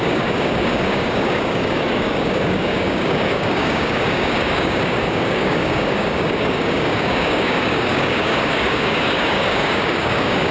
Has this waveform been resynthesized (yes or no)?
yes